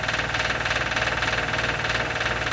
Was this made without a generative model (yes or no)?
yes